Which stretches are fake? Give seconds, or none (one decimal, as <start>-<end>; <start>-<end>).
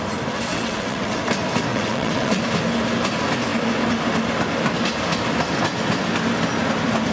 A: 0.5-1.2; 1.7-2.4